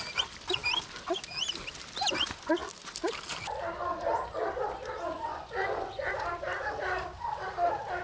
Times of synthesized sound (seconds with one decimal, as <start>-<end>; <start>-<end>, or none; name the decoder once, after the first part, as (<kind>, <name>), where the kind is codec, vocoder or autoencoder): 5.3-6.1 (vocoder, Vocos)